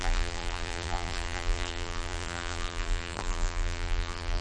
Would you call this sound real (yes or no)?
no